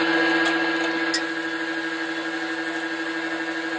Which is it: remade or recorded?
recorded